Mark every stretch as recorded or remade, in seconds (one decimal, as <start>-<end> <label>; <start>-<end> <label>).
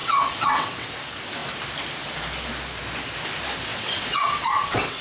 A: 0.0-0.9 remade; 0.9-3.7 recorded; 3.7-5.0 remade